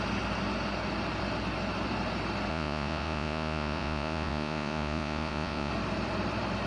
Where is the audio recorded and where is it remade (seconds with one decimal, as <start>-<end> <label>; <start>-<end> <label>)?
0.0-2.5 recorded; 2.5-5.7 remade; 5.7-6.7 recorded